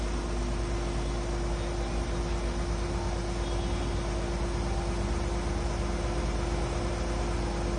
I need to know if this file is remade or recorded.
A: recorded